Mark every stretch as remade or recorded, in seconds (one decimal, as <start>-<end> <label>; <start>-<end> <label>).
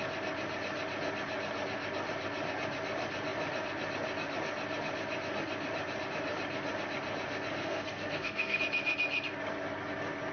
0.0-7.6 recorded; 7.6-8.6 remade; 8.6-10.3 recorded